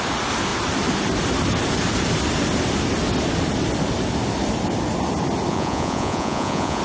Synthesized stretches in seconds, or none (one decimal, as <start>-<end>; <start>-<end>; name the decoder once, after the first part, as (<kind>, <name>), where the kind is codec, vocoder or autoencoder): 5.5-6.8 (vocoder, Vocos)